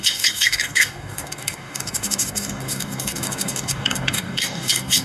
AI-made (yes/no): yes